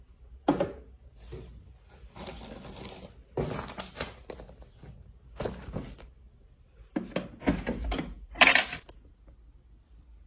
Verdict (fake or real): real